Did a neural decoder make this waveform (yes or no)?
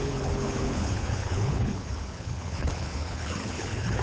yes